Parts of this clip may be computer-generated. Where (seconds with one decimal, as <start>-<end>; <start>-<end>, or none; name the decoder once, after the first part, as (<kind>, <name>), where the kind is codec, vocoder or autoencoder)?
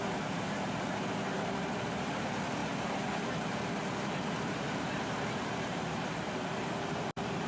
1.3-7.5 (vocoder, BigVGAN v2)